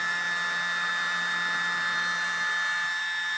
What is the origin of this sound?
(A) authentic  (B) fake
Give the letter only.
A